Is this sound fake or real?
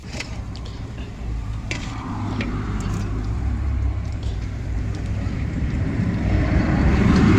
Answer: fake